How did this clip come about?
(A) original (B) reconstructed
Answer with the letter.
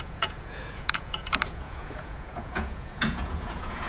B